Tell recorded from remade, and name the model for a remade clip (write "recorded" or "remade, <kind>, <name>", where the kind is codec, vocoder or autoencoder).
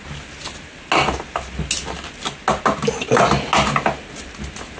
recorded